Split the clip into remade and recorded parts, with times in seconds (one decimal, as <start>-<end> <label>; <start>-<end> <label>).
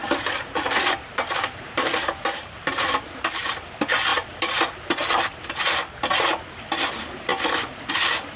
0.0-3.5 remade; 3.5-4.1 recorded; 4.1-4.6 remade; 4.6-8.4 recorded